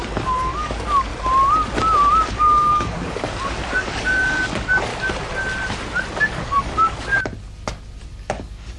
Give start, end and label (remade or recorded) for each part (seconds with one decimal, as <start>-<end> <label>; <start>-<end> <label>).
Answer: 0.0-1.1 remade; 1.1-2.3 recorded; 2.3-4.9 remade; 4.9-6.1 recorded; 6.1-7.1 remade; 7.1-8.2 recorded; 8.2-8.8 remade